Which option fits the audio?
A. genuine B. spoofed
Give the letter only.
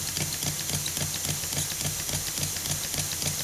A